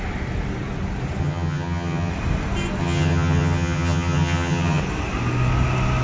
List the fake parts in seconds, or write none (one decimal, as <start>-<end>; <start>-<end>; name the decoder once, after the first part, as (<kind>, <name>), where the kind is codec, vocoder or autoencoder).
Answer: 1.2-2.1 (vocoder, HiFi-GAN); 2.8-4.8